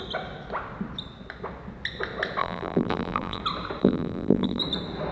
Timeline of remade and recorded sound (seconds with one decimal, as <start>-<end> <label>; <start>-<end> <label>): 0.0-2.4 recorded; 2.4-3.4 remade; 3.4-3.8 recorded; 3.8-4.6 remade; 4.6-5.1 recorded